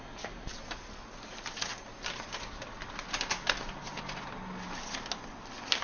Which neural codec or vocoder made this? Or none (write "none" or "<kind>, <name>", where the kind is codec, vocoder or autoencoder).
none